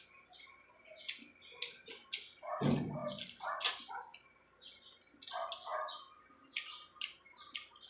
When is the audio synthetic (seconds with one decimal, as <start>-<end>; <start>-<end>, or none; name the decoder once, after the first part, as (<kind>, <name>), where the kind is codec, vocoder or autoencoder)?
none